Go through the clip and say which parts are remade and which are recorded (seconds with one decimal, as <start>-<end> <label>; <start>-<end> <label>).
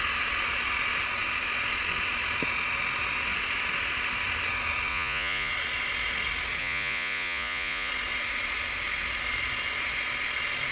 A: 0.0-4.9 recorded; 4.9-5.5 remade; 5.5-6.6 recorded; 6.6-7.9 remade; 7.9-10.7 recorded